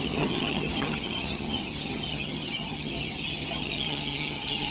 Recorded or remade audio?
remade